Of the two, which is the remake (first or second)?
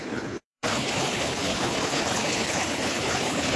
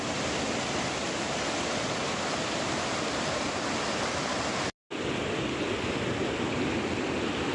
first